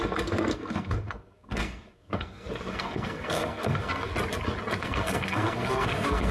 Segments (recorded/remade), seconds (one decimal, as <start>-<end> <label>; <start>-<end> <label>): 0.0-4.1 remade; 4.1-4.8 recorded; 4.8-6.3 remade